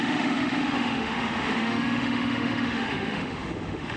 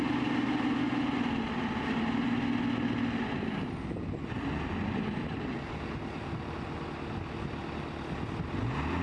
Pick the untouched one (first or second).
second